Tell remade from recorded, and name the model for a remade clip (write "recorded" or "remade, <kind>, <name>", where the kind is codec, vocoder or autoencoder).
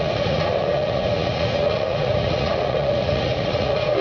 remade, vocoder, Vocos